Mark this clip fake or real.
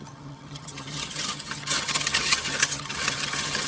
fake